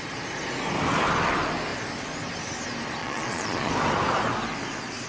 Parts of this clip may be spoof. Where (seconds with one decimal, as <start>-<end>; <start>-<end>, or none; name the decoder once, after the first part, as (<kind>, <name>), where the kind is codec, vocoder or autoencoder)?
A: 3.0-3.7 (vocoder, Vocos)